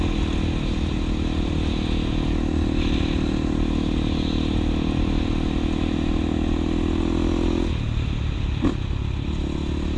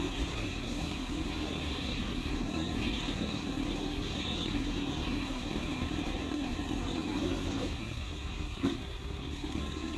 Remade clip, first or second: second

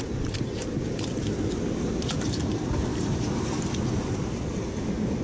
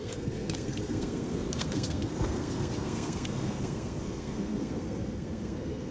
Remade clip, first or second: second